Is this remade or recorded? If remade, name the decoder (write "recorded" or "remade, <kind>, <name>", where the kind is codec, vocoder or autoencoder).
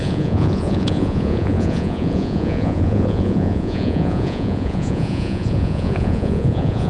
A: remade, vocoder, Vocos